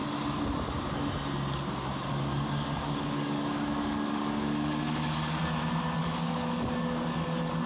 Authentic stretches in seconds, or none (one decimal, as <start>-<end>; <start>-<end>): 0.0-2.1; 5.4-6.0